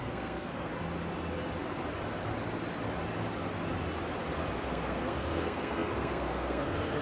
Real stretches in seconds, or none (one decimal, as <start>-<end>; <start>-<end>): 0.7-4.6